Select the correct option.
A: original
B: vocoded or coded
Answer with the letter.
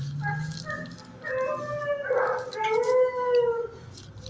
A